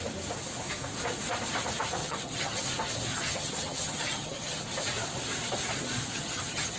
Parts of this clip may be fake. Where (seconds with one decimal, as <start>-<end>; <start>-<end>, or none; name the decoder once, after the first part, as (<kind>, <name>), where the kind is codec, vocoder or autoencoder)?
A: 2.0-2.6 (vocoder, HiFi-GAN); 3.1-4.6; 6.0-6.8